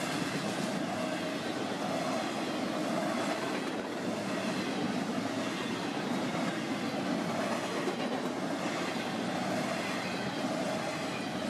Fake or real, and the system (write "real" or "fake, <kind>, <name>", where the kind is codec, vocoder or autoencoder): real